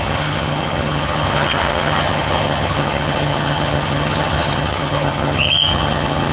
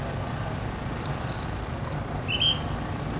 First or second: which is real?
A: second